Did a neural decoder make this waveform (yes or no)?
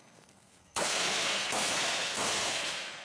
yes